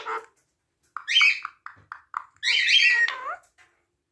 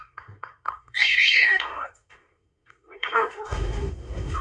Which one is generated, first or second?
second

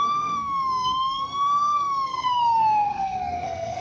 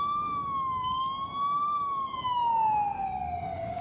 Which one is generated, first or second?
first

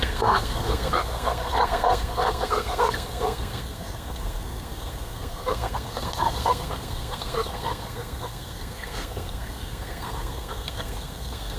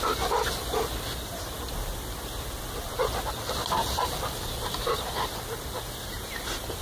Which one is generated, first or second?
first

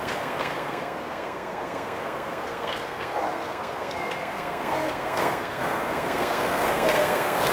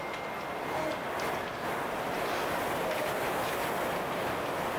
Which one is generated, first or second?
first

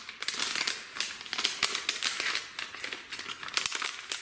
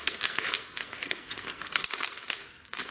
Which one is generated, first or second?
second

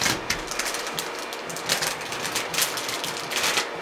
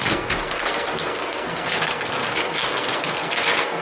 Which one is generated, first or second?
second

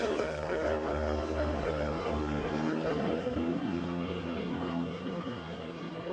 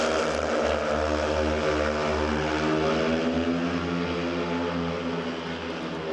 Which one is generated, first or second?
first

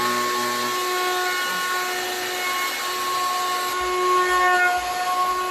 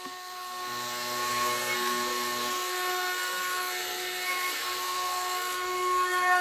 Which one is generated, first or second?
second